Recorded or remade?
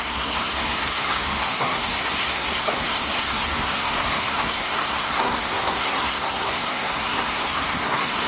remade